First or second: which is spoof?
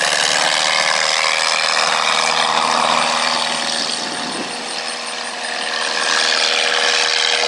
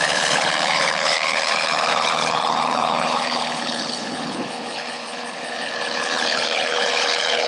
second